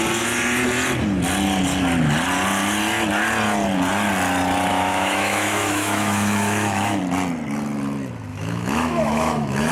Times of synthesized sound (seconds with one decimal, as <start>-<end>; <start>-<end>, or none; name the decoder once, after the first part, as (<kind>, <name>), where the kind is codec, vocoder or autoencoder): 4.7-7.0 (autoencoder, DAC-VAE); 8.3-9.7